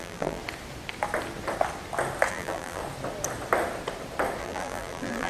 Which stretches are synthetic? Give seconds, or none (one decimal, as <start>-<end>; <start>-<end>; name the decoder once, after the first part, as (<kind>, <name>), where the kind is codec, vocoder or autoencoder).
0.0-0.4 (vocoder, BigVGAN v2); 2.3-2.8; 4.4-5.3